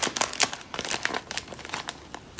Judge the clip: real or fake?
real